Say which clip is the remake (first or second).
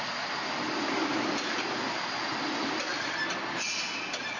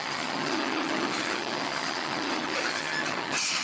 second